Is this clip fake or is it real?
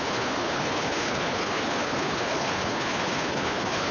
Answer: fake